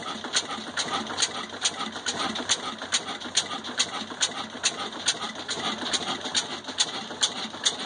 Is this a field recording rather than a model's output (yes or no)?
yes